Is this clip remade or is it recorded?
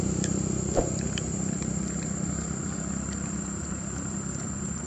recorded